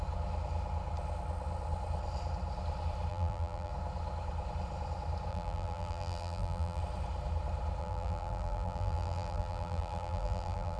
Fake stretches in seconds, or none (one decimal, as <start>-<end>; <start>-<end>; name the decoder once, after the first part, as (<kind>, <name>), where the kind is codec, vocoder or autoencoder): 3.1-3.7 (vocoder, BigVGAN v2); 5.3-6.8; 7.8-10.8